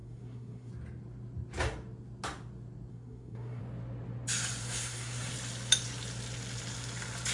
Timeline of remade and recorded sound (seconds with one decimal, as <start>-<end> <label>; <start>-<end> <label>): 0.0-0.7 remade; 0.7-2.9 recorded; 2.9-3.6 remade; 3.6-4.6 recorded; 4.6-5.3 remade; 5.3-7.3 recorded